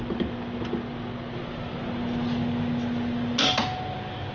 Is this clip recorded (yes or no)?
yes